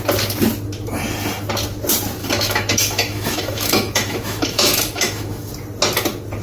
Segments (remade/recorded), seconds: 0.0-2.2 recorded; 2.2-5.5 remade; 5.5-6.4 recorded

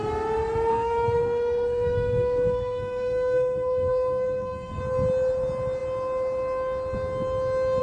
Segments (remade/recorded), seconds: 0.0-0.7 recorded; 0.7-4.8 remade; 4.8-7.8 recorded

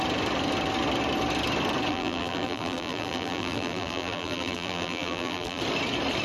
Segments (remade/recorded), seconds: 0.0-1.9 recorded; 1.9-5.6 remade; 5.6-6.2 recorded

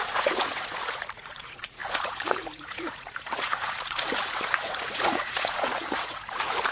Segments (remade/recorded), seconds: 0.0-6.7 remade